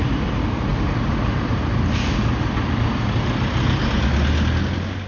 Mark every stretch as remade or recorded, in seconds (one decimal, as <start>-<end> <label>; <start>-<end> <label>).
0.0-5.1 recorded